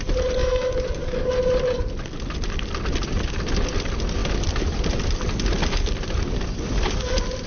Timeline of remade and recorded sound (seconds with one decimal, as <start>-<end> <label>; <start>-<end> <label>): 0.0-0.4 recorded; 0.4-1.3 remade; 1.3-7.5 recorded